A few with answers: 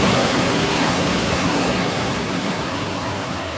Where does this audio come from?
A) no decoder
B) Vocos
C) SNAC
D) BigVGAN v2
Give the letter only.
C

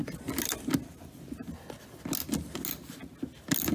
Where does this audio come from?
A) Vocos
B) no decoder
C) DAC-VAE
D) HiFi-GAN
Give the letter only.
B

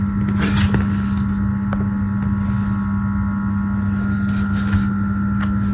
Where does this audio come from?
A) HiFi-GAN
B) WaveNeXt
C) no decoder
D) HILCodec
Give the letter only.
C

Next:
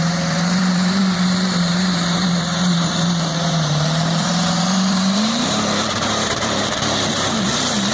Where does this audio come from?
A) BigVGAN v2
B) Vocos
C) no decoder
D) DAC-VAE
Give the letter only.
A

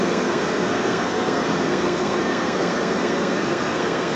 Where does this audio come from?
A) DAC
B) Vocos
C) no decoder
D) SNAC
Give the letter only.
D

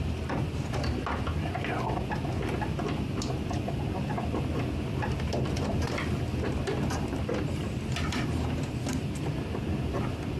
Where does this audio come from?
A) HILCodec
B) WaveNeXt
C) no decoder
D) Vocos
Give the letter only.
C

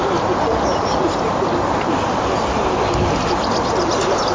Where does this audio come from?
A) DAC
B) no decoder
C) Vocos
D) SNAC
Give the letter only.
B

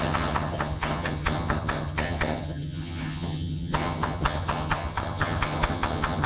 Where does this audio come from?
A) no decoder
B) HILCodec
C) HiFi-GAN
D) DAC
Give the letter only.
C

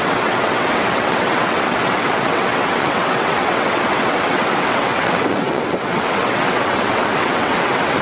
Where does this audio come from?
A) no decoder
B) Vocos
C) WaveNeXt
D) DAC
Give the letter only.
C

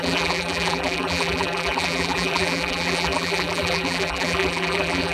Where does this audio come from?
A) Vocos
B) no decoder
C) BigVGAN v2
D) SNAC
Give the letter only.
C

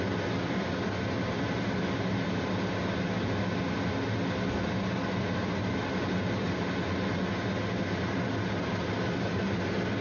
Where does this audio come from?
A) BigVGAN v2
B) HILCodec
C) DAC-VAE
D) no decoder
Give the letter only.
D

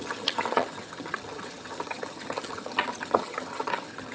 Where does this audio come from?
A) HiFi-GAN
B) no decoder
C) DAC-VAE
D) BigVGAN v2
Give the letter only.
A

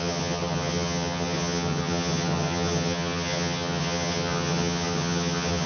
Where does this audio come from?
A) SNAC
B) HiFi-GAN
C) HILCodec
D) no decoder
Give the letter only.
B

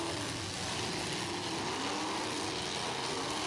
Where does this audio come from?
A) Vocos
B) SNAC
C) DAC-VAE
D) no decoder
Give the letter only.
D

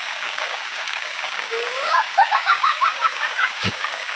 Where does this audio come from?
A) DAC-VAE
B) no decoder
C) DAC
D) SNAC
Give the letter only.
C